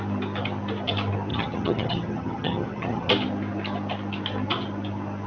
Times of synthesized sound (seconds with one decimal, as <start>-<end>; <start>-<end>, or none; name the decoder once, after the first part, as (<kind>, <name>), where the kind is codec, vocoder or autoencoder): 1.3-3.1 (vocoder, HiFi-GAN)

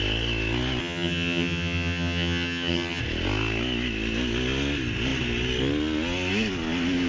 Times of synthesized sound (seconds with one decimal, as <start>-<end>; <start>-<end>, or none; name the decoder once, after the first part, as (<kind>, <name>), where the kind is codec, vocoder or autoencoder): 0.8-3.0 (vocoder, HiFi-GAN)

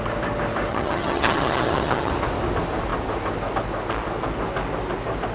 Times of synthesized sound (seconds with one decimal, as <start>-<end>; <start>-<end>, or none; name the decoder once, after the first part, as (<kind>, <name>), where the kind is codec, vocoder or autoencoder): 0.7-2.1 (vocoder, HiFi-GAN)

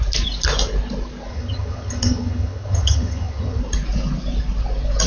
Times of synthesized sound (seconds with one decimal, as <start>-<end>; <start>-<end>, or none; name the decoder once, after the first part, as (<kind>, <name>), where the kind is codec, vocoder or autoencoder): 1.3-3.6 (vocoder, HiFi-GAN)

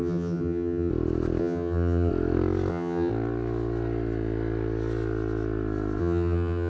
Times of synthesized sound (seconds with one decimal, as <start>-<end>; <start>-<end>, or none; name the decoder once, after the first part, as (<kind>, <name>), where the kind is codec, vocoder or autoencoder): 0.0-0.9 (vocoder, HiFi-GAN); 1.4-2.1; 2.7-3.1; 6.0-6.7

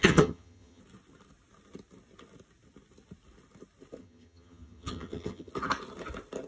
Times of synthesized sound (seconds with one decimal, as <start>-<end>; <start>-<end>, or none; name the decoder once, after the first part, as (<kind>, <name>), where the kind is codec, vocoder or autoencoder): 0.0-0.8 (vocoder, HiFi-GAN); 4.0-5.5